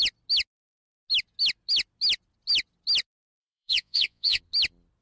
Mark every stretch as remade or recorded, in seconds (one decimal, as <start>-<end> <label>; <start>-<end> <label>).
0.0-3.4 recorded; 3.4-4.4 remade; 4.4-5.0 recorded